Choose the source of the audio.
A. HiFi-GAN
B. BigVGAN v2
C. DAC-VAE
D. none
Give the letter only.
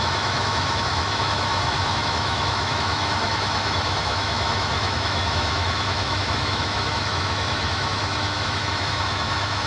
C